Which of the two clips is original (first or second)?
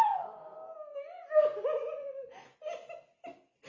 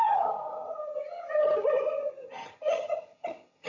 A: first